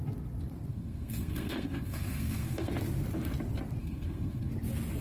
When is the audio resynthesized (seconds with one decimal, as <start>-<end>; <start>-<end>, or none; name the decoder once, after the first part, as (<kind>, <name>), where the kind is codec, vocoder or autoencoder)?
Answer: 0.7-2.7 (codec, SNAC); 3.8-4.5